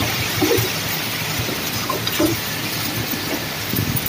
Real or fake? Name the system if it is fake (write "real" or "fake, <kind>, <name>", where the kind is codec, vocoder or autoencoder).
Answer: real